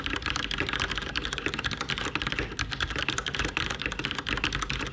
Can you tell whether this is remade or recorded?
recorded